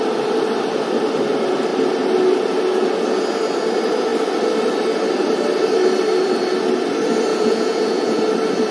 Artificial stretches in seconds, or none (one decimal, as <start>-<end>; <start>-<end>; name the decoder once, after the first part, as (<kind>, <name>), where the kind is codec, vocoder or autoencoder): 7.3-8.2 (vocoder, Vocos)